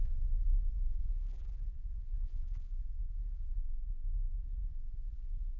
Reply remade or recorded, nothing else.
remade